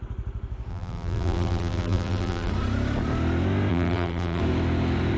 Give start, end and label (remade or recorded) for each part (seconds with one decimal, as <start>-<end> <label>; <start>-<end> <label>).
0.0-0.7 recorded; 0.7-2.5 remade; 2.5-3.7 recorded; 3.7-4.4 remade; 4.4-5.2 recorded